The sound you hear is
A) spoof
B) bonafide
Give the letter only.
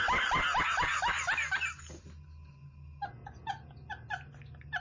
B